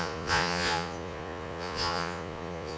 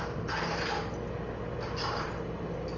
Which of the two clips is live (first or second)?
second